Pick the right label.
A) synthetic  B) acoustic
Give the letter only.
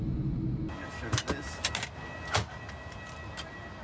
B